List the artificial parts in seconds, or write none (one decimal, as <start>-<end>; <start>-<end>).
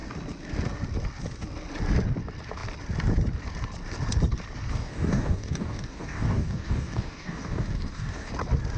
4.7-8.3